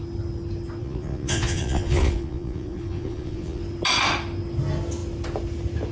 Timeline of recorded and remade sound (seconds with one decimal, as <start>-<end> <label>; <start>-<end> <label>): 0.0-0.8 recorded; 0.8-3.6 remade; 3.6-5.9 recorded

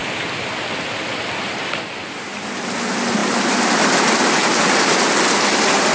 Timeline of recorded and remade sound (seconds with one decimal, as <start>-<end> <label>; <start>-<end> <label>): 0.0-5.9 recorded

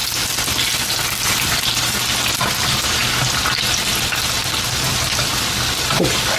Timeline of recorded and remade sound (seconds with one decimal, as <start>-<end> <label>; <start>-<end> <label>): 0.0-6.4 recorded

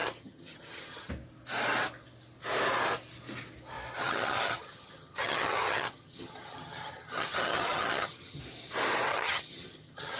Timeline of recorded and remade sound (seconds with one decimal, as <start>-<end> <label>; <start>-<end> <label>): 0.0-1.1 remade; 1.1-4.0 recorded; 4.0-8.4 remade; 8.4-9.1 recorded; 9.1-10.2 remade

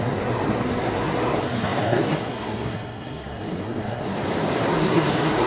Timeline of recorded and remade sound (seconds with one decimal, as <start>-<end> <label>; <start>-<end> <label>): 0.0-4.2 remade; 4.2-4.7 recorded; 4.7-5.5 remade

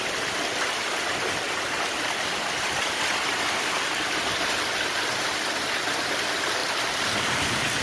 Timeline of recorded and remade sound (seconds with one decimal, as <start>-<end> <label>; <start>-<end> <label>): 0.0-7.8 recorded

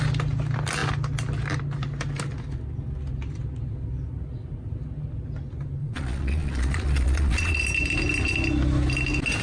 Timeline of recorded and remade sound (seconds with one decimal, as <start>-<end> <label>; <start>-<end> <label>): 0.0-5.8 recorded; 5.8-7.6 remade; 7.6-9.4 recorded

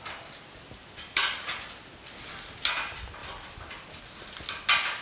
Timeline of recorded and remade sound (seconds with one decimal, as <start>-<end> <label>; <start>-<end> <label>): 0.0-0.8 recorded; 0.8-2.3 remade; 2.3-3.2 recorded; 3.2-4.0 remade; 4.0-5.0 recorded